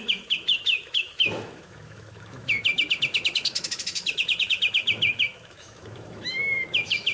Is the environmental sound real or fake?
fake